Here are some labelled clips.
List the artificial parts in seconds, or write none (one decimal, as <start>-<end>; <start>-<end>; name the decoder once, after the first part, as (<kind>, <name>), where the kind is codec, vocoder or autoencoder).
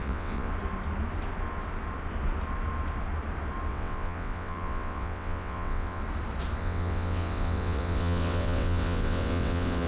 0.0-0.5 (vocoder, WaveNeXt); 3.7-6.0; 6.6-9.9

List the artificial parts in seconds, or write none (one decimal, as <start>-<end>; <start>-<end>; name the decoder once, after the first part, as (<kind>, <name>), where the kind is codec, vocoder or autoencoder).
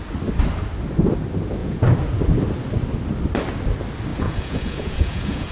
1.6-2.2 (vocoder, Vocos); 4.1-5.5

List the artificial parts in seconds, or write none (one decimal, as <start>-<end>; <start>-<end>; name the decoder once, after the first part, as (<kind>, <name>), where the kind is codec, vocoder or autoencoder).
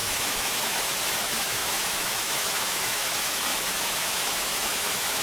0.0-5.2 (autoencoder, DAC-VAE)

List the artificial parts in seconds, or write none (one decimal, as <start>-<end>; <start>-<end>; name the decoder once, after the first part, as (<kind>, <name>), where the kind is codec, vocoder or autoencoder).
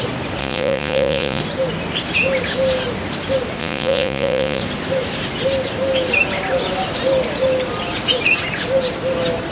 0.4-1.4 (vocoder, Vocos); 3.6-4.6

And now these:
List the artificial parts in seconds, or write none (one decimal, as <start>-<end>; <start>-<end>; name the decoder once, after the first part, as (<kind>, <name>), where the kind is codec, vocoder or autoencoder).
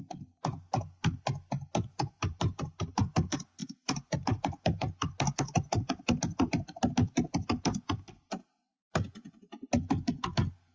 1.9-3.0 (vocoder, BigVGAN v2); 3.6-4.9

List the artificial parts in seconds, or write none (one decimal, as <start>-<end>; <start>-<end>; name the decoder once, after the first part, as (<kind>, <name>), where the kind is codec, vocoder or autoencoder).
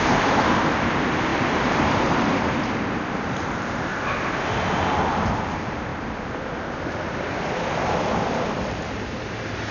0.0-3.9 (vocoder, BigVGAN v2); 4.5-5.9; 8.7-9.7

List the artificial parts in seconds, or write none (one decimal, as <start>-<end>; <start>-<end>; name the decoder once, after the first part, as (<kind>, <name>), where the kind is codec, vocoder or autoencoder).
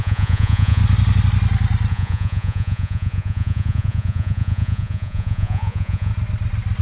0.0-0.8 (vocoder, Vocos); 1.9-6.1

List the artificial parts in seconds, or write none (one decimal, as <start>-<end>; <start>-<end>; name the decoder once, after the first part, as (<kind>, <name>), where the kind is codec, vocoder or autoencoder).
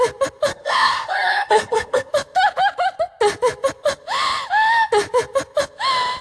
0.5-2.1 (codec, SNAC)